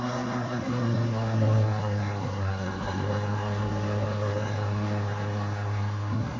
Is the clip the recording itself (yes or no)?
no